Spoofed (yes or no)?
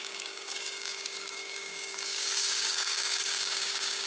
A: yes